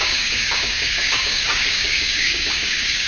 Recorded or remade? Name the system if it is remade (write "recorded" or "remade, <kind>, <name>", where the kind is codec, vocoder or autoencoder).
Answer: remade, codec, DAC